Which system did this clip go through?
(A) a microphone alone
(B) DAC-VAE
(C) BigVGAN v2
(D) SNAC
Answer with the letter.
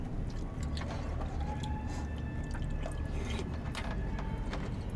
A